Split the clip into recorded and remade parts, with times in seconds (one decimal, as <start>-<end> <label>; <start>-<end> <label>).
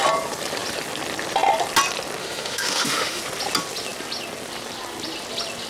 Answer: 0.0-2.2 recorded; 2.2-3.2 remade; 3.2-5.7 recorded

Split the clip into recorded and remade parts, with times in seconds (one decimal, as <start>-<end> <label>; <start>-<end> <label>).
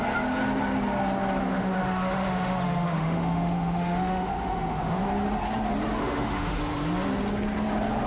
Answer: 0.0-1.4 recorded; 1.4-5.0 remade; 5.0-6.0 recorded; 6.0-6.6 remade; 6.6-8.1 recorded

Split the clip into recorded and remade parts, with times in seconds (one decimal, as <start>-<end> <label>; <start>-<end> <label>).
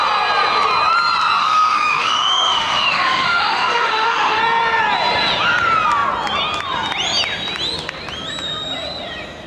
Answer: 0.0-1.4 recorded; 1.4-4.4 remade; 4.4-9.5 recorded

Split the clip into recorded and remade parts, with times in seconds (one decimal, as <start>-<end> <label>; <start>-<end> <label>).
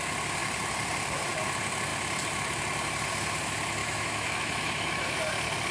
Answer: 0.0-3.8 recorded; 3.8-5.2 remade; 5.2-5.7 recorded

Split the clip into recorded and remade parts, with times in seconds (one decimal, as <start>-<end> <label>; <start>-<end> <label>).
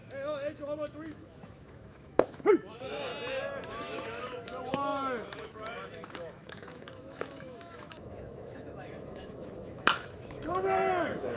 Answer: 0.0-3.1 remade; 3.1-3.7 recorded; 3.7-11.4 remade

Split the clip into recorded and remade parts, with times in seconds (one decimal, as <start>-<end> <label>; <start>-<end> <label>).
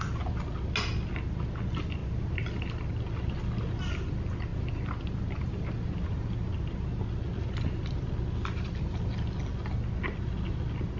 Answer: 0.0-11.0 recorded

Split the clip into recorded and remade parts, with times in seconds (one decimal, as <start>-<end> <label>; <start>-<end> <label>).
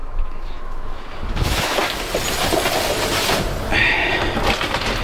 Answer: 0.0-1.8 remade; 1.8-5.0 recorded